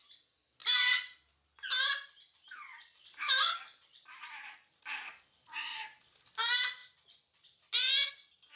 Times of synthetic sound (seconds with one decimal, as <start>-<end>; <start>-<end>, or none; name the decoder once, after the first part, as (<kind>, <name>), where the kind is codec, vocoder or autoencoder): none